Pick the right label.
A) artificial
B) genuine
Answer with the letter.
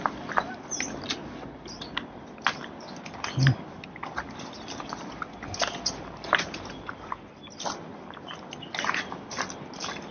B